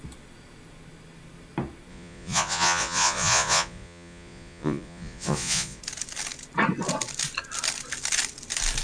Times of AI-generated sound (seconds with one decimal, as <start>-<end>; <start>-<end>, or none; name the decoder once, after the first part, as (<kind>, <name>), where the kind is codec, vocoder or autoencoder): 1.9-5.8 (vocoder, Vocos)